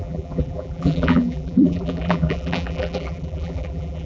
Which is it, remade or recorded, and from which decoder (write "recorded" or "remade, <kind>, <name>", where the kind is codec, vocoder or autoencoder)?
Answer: remade, vocoder, BigVGAN v2